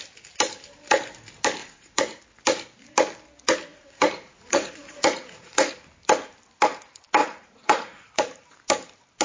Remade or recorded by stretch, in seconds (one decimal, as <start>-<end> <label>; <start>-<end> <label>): 0.0-1.6 recorded; 1.6-2.2 remade; 2.2-3.7 recorded; 3.7-5.7 remade; 5.7-7.2 recorded; 7.2-8.1 remade; 8.1-9.2 recorded